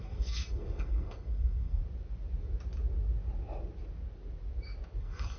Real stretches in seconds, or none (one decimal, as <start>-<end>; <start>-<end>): 1.8-5.0